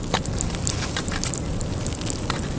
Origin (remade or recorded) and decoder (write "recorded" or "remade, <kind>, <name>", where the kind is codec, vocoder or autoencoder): recorded